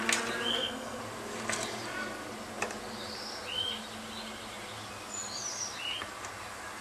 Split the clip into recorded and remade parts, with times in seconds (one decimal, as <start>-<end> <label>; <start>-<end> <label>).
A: 0.0-0.5 recorded; 0.5-1.0 remade; 1.0-6.8 recorded